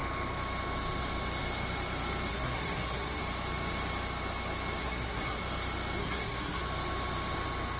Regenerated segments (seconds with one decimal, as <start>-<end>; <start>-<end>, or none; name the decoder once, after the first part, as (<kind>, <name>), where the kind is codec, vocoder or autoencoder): 2.3-3.2 (codec, SNAC); 4.8-5.4; 6.0-6.6